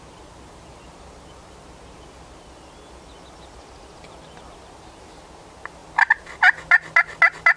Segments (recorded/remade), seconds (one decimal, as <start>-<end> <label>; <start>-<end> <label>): 0.0-7.6 recorded